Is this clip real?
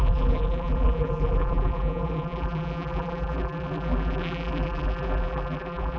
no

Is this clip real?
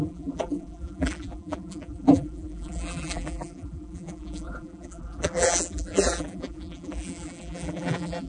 no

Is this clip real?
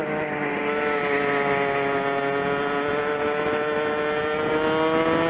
yes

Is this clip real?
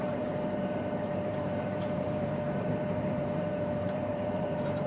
no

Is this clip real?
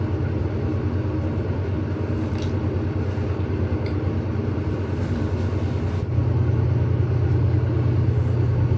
yes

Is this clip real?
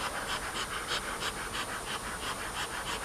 yes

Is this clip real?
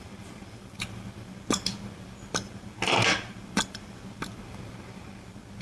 yes